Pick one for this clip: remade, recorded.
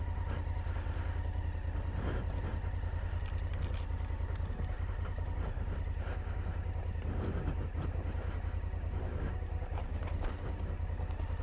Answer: recorded